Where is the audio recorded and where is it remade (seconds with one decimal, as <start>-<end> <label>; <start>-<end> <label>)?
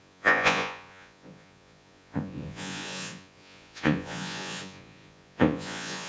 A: 0.0-6.1 remade